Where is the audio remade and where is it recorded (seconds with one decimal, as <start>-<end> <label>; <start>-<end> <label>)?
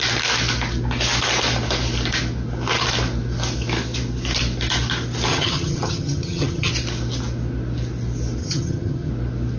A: 0.0-5.3 recorded; 5.3-6.7 remade; 6.7-8.4 recorded; 8.4-9.1 remade; 9.1-9.6 recorded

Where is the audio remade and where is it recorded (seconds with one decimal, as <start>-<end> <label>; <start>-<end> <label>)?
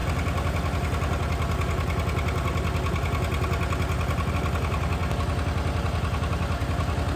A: 0.0-7.2 recorded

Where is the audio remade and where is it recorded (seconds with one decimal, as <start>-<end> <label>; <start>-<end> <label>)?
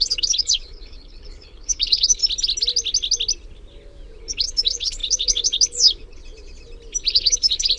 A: 0.0-2.2 remade; 2.2-4.2 recorded; 4.2-6.2 remade; 6.2-7.1 recorded; 7.1-7.8 remade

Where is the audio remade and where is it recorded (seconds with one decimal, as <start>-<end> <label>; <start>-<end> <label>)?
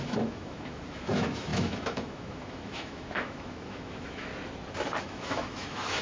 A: 0.0-4.3 remade; 4.3-5.0 recorded; 5.0-6.0 remade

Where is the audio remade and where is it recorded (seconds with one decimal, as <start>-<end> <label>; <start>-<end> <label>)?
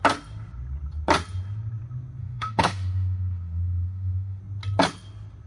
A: 0.0-2.2 recorded; 2.2-4.4 remade; 4.4-5.5 recorded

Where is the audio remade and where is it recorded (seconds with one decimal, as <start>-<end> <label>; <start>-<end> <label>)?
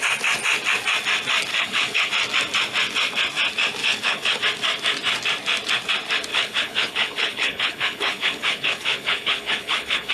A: 0.0-1.5 recorded; 1.5-2.1 remade; 2.1-3.8 recorded; 3.8-4.4 remade; 4.4-6.3 recorded; 6.3-10.1 remade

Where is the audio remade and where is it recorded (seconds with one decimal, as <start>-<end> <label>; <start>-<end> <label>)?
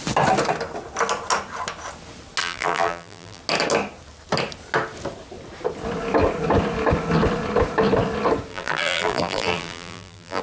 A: 0.0-2.4 recorded; 2.4-3.4 remade; 3.4-8.5 recorded; 8.5-10.4 remade